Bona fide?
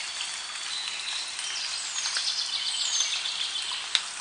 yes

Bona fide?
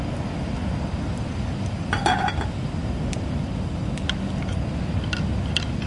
yes